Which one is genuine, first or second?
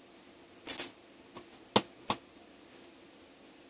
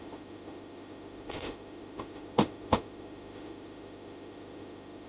first